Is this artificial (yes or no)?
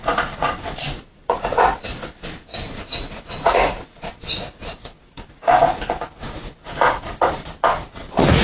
yes